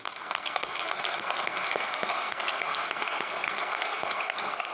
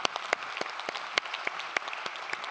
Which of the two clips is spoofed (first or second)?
first